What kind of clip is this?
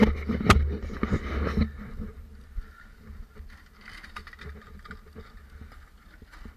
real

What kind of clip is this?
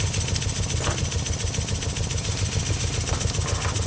real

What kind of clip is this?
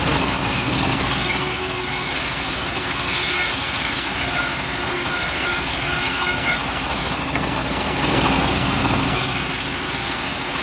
fake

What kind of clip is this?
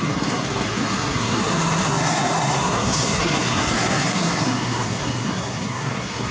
fake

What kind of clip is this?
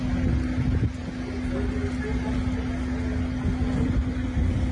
real